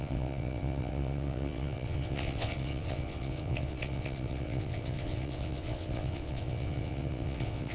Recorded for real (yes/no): no